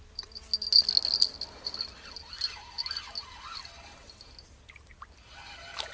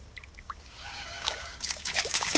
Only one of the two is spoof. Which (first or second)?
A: second